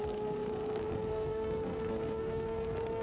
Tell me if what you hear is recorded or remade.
remade